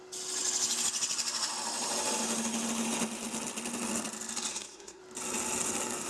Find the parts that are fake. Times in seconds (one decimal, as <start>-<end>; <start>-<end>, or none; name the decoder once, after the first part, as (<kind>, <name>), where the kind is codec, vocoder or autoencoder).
4.5-5.0 (codec, SNAC)